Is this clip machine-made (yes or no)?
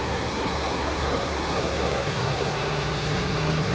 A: yes